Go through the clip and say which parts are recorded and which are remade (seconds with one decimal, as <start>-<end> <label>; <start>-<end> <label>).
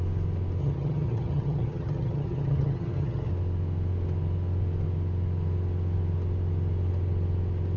0.0-0.6 recorded; 0.6-3.3 remade; 3.3-7.8 recorded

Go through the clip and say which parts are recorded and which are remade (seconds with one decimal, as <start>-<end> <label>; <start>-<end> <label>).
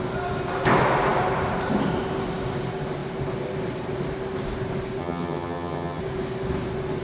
0.0-5.0 recorded; 5.0-6.0 remade; 6.0-7.0 recorded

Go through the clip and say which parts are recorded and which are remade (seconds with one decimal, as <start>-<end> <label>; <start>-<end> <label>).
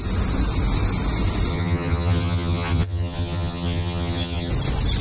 0.0-1.5 recorded; 1.5-4.5 remade; 4.5-5.0 recorded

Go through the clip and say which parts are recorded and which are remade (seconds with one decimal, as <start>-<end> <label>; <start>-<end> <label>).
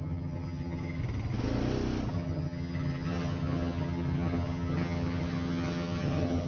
0.0-1.0 remade; 1.0-2.1 recorded; 2.1-6.5 remade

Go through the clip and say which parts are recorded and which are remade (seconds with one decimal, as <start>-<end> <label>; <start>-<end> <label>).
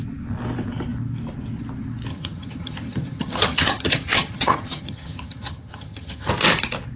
0.0-2.1 recorded; 2.1-6.3 remade; 6.3-7.0 recorded